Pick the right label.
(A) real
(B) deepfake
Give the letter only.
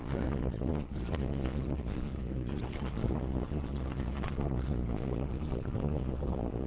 B